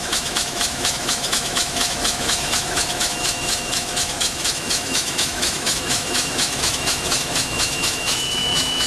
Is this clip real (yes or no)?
no